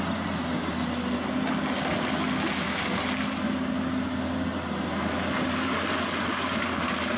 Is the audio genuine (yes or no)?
yes